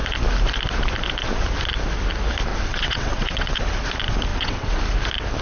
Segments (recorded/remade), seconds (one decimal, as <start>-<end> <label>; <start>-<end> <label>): 0.0-2.5 recorded; 2.5-3.6 remade; 3.6-4.3 recorded; 4.3-4.8 remade; 4.8-5.4 recorded